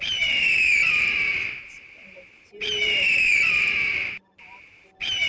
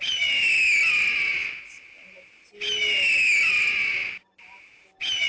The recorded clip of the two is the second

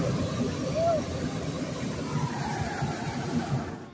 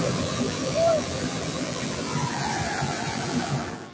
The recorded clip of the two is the first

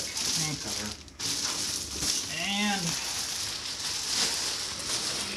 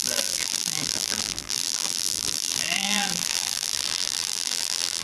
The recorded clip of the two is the first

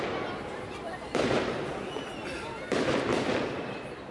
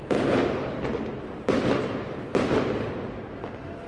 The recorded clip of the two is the second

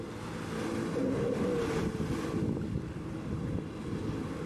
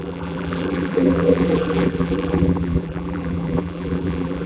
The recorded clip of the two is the first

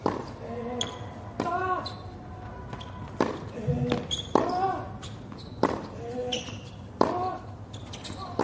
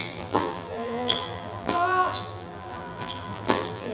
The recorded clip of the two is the first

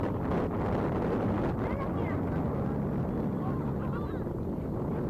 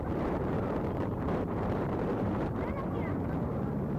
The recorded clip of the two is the first